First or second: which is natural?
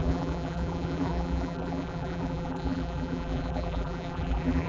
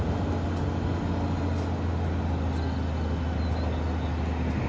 second